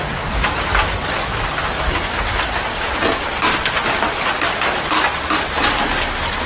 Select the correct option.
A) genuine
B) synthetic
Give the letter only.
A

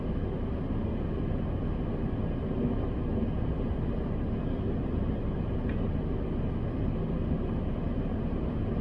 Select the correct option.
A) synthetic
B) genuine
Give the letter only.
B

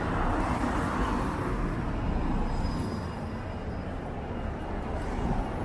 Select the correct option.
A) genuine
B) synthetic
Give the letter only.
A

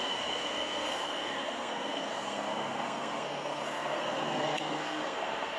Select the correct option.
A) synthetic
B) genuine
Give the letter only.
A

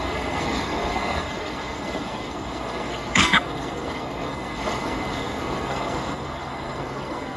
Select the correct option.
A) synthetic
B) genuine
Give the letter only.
A